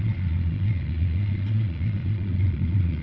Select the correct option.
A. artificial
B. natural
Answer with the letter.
A